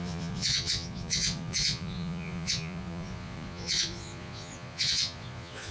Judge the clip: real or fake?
fake